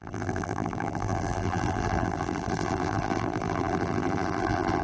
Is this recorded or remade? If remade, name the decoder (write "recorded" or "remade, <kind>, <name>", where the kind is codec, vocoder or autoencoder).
remade, vocoder, BigVGAN v2